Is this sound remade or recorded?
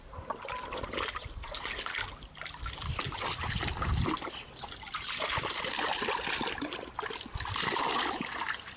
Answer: recorded